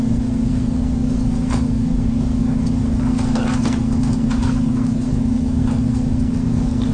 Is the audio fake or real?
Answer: fake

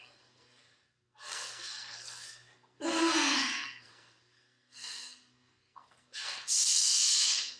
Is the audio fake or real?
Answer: fake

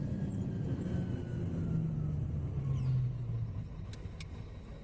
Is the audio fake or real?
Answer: real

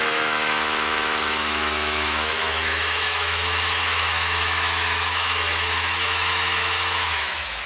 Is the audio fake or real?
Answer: fake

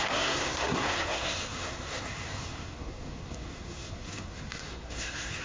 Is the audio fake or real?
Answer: fake